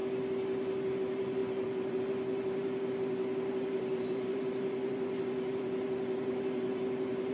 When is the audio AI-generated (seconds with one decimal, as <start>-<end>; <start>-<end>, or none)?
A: 0.9-7.3